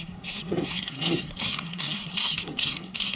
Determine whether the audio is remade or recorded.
remade